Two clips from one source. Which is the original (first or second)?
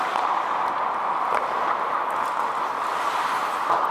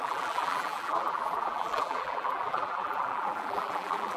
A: first